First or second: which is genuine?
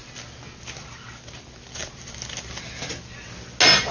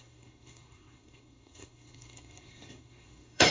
first